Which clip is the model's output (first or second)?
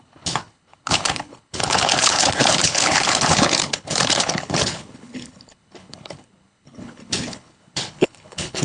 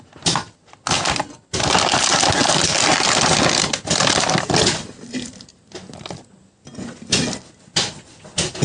first